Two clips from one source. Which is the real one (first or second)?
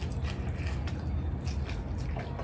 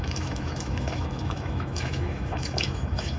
first